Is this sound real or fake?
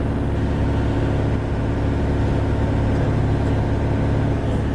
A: real